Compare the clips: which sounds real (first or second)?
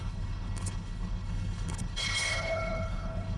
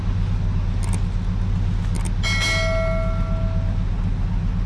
second